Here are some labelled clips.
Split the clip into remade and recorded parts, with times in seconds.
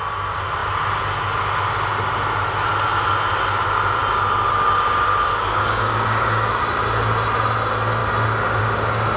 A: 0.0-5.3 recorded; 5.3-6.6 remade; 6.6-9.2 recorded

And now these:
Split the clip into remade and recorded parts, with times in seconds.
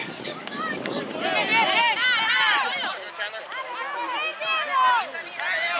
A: 0.0-1.0 remade; 1.0-5.8 recorded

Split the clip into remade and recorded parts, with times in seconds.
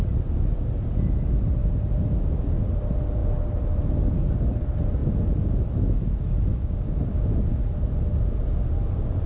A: 0.0-6.5 recorded; 6.5-7.0 remade; 7.0-9.3 recorded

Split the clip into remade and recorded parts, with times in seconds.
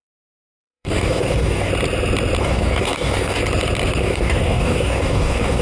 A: 0.0-1.7 remade; 1.7-2.4 recorded; 2.4-3.4 remade; 3.4-4.0 recorded; 4.0-5.6 remade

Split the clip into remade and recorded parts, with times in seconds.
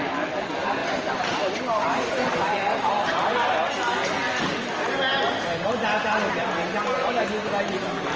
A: 0.0-8.2 recorded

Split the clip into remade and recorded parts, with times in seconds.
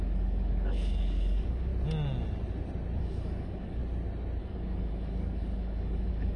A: 0.0-1.7 remade; 1.7-3.0 recorded; 3.0-3.8 remade; 3.8-4.4 recorded; 4.4-6.4 remade